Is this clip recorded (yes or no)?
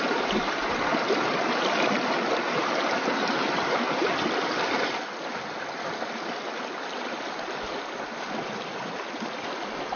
yes